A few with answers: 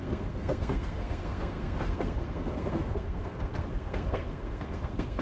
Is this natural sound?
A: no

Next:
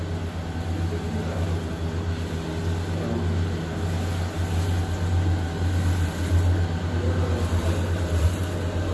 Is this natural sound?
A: yes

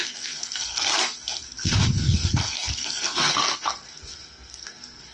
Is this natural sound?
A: no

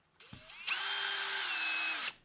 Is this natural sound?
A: yes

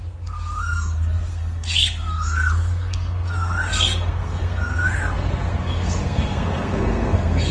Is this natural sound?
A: no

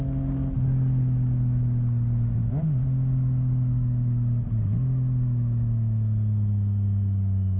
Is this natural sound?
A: yes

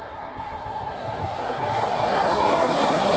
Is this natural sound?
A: no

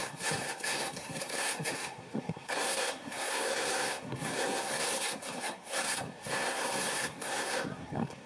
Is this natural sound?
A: no